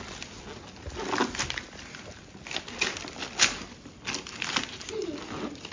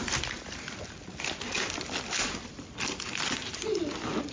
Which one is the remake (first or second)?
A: second